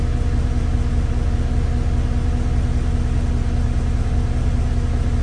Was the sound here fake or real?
real